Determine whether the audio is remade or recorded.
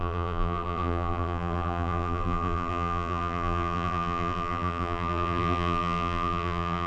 remade